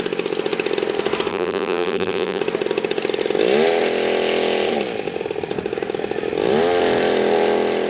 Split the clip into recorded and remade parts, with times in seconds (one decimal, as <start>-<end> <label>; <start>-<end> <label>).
0.0-1.3 recorded; 1.3-2.4 remade; 2.4-7.9 recorded